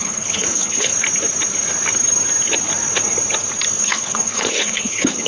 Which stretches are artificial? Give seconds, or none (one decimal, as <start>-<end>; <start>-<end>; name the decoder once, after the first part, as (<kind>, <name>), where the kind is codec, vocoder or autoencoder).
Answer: 0.0-0.9 (codec, HILCodec); 3.8-5.3